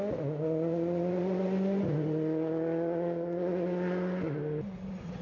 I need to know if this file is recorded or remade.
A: recorded